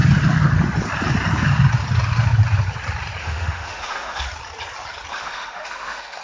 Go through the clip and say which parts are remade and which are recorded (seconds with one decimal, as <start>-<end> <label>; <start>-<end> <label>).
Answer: 0.0-3.2 recorded; 3.2-4.2 remade; 4.2-5.1 recorded; 5.1-6.2 remade